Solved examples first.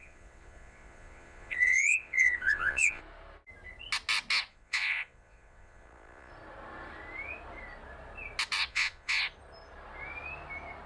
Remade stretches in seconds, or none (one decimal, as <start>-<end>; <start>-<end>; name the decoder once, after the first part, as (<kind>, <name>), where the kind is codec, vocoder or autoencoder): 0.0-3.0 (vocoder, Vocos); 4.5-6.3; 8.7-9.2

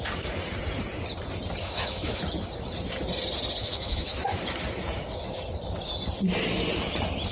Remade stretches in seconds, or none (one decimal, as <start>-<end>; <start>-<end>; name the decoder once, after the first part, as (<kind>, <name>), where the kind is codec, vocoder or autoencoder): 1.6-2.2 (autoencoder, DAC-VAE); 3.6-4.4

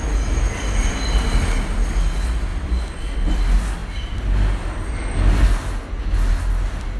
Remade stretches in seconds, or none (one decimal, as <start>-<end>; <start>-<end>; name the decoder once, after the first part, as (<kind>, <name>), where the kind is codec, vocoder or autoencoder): 2.5-3.4 (vocoder, BigVGAN v2)

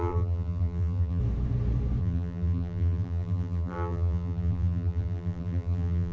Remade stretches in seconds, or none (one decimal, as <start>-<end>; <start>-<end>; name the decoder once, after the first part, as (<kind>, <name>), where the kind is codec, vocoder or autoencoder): 0.0-1.2 (vocoder, BigVGAN v2); 2.0-6.1

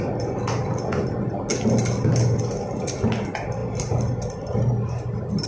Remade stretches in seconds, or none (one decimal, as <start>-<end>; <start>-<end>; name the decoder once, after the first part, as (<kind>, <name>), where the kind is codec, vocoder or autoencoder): none

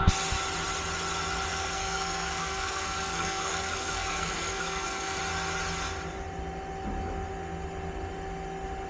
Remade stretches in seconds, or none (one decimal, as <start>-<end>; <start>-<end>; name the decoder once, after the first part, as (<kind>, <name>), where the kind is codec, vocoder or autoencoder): 1.5-5.2 (codec, SNAC)

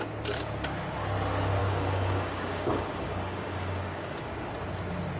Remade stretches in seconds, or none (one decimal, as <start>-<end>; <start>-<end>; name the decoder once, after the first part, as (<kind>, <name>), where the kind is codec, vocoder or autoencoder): 1.6-4.5 (codec, DAC)